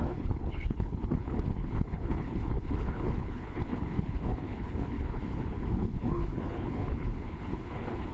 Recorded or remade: remade